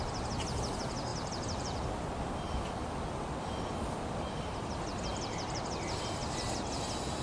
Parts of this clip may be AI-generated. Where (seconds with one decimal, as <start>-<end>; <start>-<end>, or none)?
1.1-1.9; 5.1-5.6